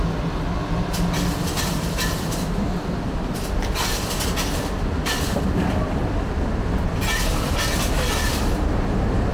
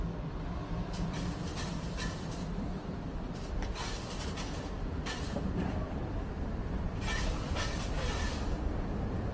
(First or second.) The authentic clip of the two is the first